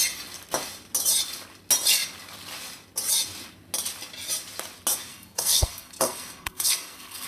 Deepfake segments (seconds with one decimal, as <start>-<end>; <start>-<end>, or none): 5.1-7.3